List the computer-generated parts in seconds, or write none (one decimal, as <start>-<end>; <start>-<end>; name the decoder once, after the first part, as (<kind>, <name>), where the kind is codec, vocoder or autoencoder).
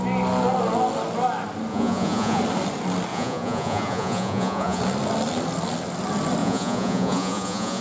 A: 1.7-2.4 (vocoder, Vocos); 3.1-4.8; 6.4-7.8